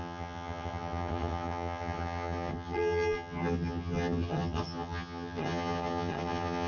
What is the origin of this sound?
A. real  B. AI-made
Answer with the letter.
B